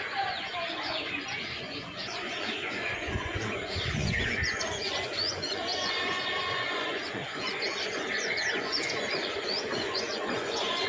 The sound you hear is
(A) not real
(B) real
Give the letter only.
A